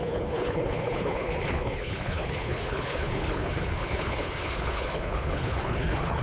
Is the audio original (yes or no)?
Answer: no